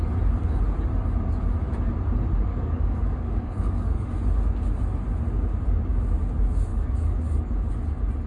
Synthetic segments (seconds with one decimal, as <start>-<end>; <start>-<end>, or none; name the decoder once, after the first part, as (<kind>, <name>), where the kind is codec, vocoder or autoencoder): 2.5-4.1 (codec, DAC); 6.7-7.7